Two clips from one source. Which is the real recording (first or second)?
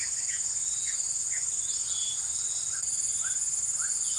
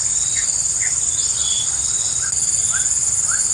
second